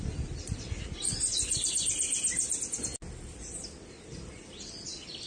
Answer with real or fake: real